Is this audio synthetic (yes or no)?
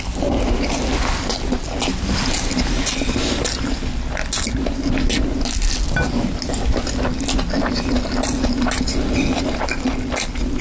no